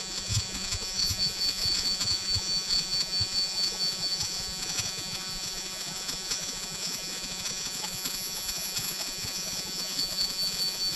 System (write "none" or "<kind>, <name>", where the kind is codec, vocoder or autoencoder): vocoder, Vocos